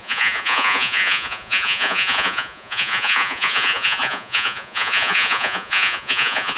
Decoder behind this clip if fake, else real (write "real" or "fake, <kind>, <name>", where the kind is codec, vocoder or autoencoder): fake, vocoder, Vocos